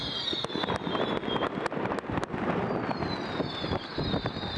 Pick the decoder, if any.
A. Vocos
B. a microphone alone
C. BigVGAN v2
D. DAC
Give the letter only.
B